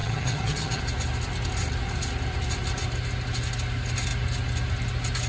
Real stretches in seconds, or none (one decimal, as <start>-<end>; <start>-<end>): 0.8-5.3